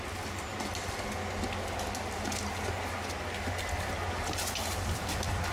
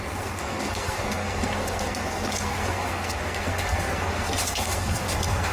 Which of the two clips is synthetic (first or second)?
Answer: second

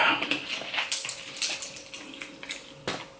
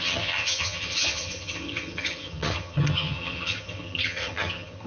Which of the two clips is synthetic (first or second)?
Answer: second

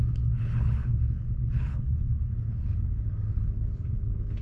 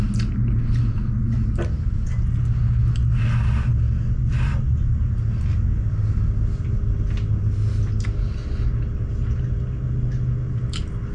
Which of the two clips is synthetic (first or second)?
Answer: first